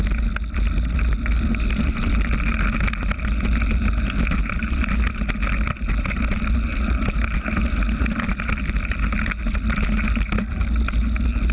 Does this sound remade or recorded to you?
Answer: recorded